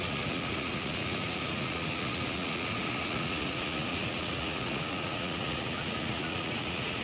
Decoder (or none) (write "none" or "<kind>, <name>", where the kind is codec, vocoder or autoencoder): vocoder, Vocos